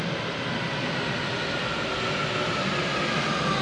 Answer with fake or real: real